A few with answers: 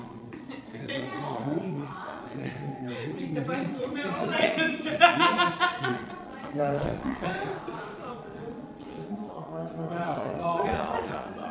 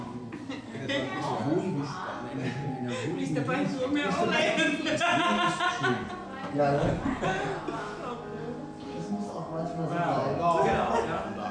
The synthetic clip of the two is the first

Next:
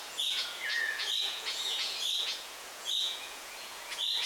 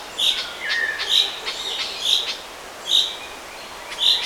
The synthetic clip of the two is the first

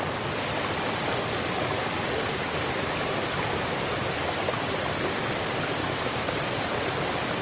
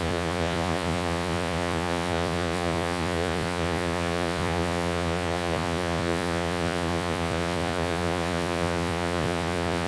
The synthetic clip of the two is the second